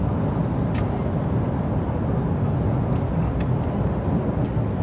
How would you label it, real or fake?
real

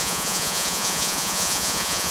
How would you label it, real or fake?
fake